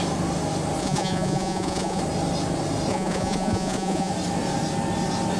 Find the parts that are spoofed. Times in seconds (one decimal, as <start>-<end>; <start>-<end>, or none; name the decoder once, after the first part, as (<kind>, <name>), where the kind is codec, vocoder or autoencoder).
0.8-2.0 (vocoder, Vocos); 2.9-4.1